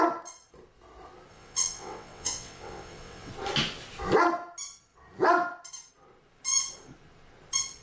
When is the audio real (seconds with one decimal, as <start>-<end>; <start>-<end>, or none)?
0.0-1.3; 3.3-7.8